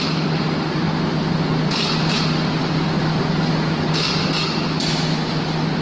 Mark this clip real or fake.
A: real